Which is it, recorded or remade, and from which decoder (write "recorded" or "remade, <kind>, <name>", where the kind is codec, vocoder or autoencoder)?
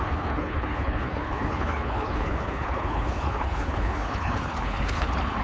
remade, codec, HILCodec